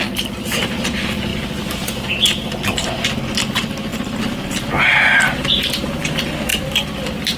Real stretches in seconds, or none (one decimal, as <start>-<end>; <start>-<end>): 0.0-7.4